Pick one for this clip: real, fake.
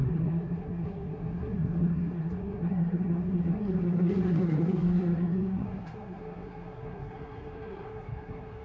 fake